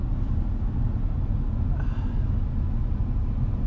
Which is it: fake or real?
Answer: real